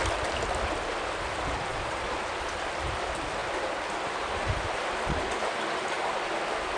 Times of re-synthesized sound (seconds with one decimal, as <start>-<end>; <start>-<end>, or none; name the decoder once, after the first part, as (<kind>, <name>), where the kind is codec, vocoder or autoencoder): 1.7-2.2 (vocoder, Vocos)